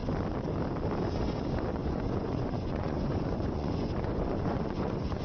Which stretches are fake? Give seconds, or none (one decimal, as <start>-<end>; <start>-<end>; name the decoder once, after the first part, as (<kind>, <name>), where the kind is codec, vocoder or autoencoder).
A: 1.8-5.2 (vocoder, Vocos)